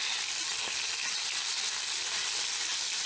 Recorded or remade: recorded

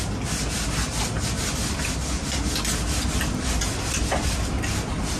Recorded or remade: recorded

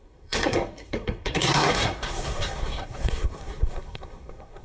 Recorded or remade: remade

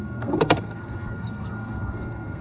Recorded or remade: remade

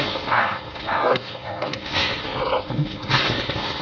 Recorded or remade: remade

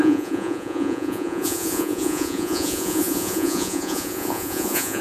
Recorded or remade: remade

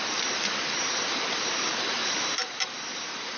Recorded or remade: remade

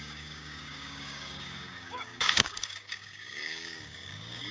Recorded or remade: remade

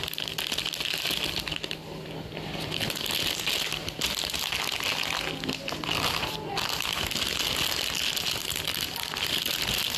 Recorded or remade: recorded